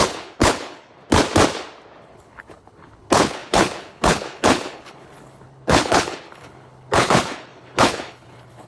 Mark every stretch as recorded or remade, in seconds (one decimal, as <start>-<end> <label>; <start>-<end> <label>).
0.0-1.0 remade; 1.0-2.0 recorded; 2.0-8.7 remade